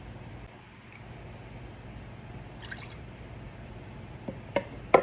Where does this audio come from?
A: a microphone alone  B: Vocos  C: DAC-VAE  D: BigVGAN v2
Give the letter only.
A